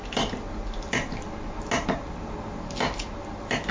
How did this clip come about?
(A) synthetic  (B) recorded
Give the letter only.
B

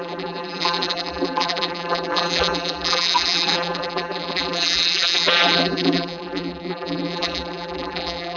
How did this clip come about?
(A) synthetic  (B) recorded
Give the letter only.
A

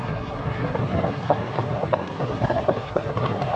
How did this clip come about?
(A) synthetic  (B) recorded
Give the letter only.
A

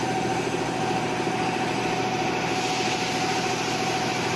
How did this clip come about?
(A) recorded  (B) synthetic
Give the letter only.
A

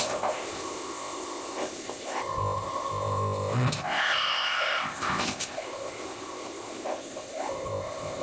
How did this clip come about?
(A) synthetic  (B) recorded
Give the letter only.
A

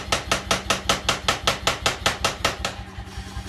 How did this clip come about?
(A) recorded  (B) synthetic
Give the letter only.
A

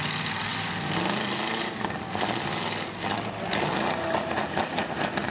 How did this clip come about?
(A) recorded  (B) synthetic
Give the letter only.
A